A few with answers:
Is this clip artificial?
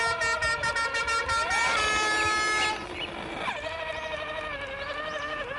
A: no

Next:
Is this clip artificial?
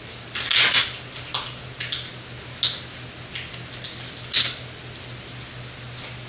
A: no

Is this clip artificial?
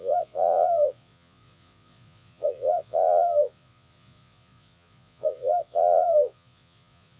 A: yes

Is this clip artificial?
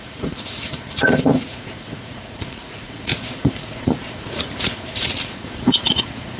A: yes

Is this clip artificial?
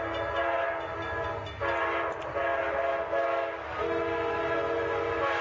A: no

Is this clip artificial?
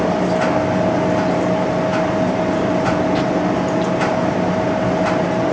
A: no